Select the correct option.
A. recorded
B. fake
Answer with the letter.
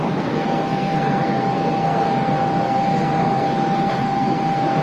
B